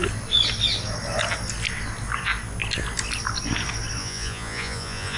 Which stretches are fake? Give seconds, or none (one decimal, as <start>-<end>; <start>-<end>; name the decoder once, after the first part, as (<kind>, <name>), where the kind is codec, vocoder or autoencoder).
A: 4.0-5.2 (vocoder, Vocos)